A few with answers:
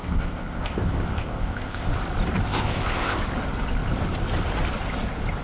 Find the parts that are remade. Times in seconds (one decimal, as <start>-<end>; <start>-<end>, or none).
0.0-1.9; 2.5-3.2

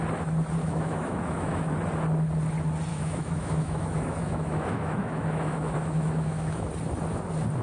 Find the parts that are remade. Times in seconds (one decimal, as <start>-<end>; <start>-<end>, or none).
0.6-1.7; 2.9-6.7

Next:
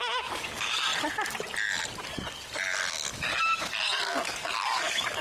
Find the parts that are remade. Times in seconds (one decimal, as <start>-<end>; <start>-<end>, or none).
0.0-0.9; 2.9-3.3; 4.0-5.2